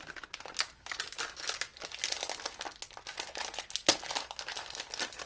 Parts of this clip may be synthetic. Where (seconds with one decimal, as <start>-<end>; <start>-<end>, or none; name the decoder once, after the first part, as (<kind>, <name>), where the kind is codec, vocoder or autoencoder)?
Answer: none